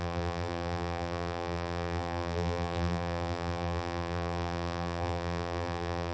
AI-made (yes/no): yes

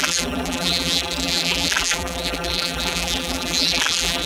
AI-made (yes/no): yes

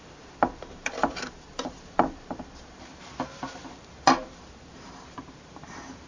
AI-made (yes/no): yes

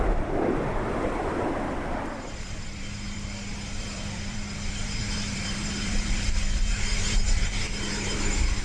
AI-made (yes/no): yes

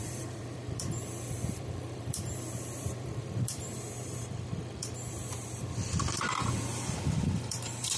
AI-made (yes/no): yes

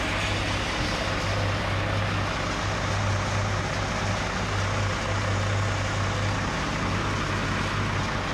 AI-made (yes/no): no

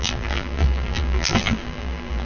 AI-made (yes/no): yes